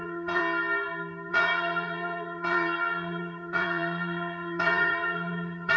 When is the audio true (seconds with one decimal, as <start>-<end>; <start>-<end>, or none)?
0.4-1.3